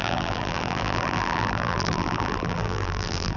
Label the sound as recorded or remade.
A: remade